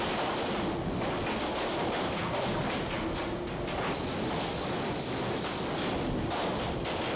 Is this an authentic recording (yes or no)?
yes